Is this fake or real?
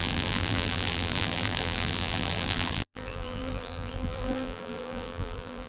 fake